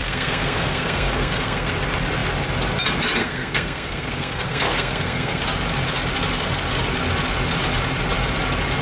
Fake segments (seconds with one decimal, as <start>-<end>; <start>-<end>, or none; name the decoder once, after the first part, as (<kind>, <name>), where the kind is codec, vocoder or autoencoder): 0.0-1.7 (codec, SNAC); 3.2-5.4